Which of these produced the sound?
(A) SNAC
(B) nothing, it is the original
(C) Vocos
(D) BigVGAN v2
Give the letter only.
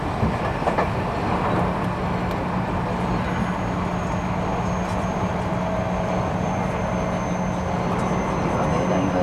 B